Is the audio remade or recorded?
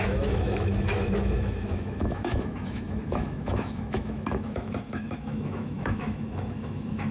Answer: remade